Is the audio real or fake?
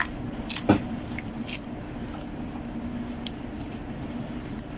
real